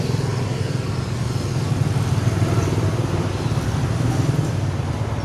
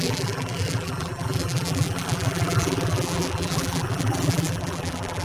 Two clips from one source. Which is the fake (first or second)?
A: second